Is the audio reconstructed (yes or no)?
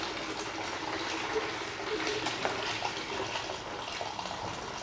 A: no